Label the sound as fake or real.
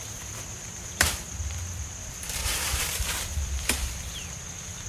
fake